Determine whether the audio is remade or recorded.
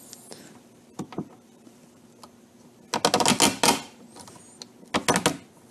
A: recorded